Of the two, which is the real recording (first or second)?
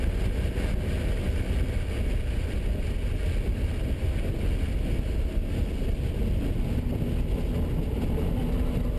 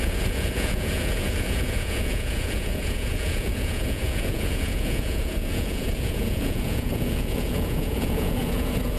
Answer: first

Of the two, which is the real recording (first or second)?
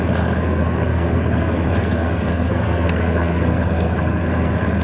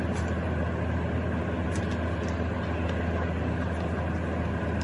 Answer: second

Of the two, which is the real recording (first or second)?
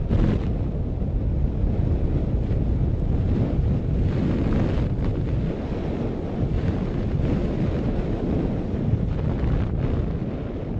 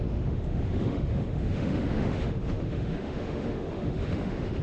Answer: first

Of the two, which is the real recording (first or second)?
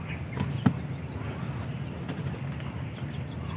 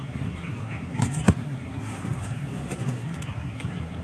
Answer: first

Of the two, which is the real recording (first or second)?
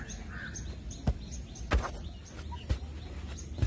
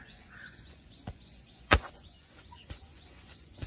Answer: first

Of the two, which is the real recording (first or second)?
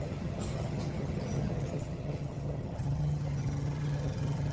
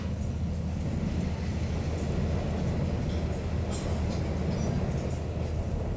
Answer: second